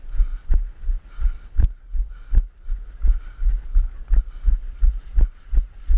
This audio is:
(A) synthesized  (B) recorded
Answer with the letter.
B